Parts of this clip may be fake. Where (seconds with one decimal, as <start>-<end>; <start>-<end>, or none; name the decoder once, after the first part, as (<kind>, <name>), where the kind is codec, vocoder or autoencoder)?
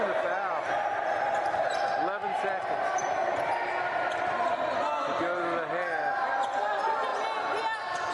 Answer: none